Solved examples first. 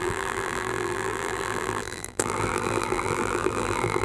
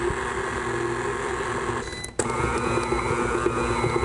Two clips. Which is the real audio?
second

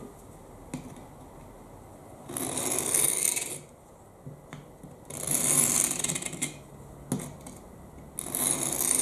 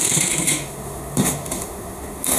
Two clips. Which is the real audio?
first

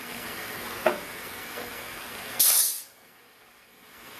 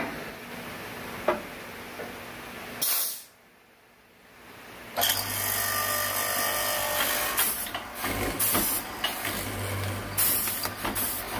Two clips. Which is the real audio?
second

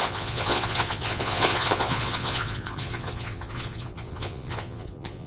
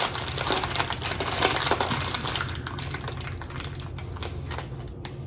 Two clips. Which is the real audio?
second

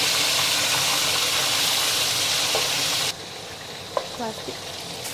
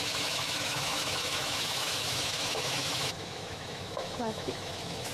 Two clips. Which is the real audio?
first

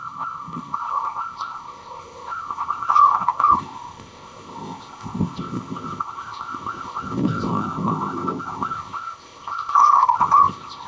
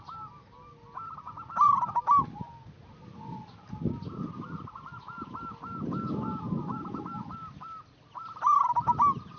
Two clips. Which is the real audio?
second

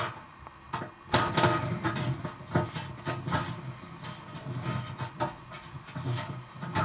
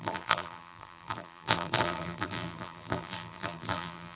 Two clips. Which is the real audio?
first